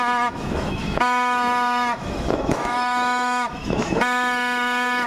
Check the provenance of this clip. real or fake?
fake